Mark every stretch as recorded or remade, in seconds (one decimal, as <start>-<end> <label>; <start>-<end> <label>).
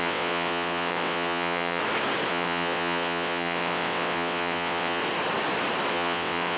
0.0-1.8 remade; 1.8-2.3 recorded; 2.3-5.0 remade; 5.0-5.9 recorded; 5.9-6.6 remade